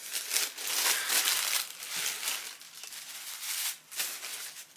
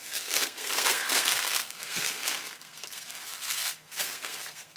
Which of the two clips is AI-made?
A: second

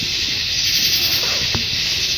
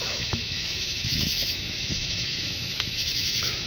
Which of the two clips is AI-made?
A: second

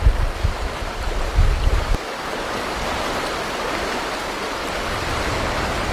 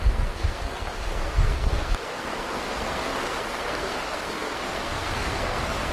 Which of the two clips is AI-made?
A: second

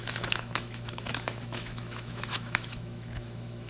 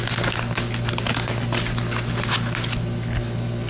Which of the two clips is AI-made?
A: first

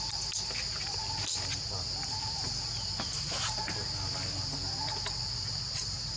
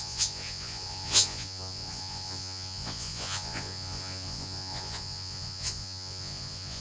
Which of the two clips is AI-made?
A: second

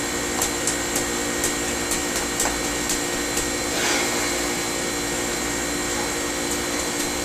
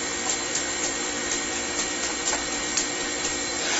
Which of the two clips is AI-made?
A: second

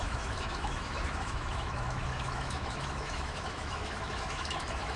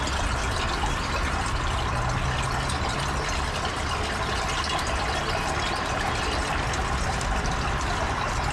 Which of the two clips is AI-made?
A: first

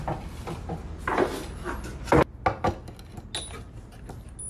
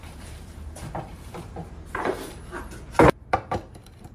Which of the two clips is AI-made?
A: second